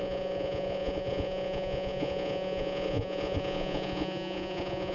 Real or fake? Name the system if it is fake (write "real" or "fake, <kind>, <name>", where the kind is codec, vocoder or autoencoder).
fake, vocoder, Vocos